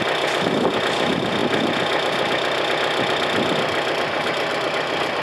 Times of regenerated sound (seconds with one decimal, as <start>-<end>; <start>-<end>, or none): none